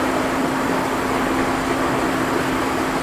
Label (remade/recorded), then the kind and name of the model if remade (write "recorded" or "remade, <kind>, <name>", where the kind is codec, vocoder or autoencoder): recorded